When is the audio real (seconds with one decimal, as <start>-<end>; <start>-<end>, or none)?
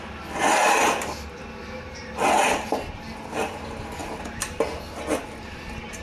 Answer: 0.0-6.0